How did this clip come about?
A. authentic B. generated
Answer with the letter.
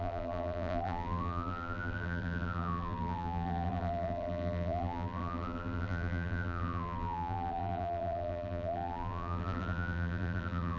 B